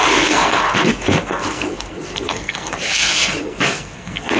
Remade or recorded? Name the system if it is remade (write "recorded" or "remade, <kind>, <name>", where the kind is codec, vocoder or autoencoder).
remade, codec, SNAC